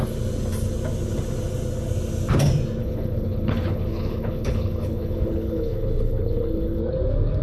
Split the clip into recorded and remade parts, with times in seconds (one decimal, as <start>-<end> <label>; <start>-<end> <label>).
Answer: 0.0-2.8 recorded; 2.8-6.8 remade; 6.8-7.4 recorded